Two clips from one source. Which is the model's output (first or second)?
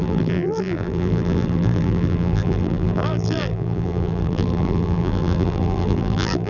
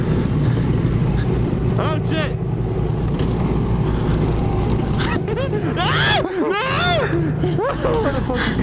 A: first